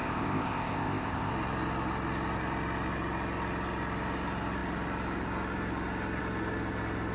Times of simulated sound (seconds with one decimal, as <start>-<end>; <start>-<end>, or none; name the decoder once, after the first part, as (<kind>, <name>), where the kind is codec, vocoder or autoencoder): 0.0-1.3 (codec, ZipCodec)